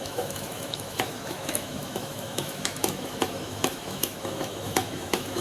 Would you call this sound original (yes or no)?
no